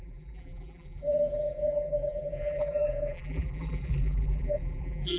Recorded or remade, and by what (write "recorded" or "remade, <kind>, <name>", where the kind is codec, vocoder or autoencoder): remade, vocoder, BigVGAN v2